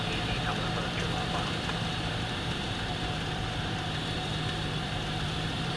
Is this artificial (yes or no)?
yes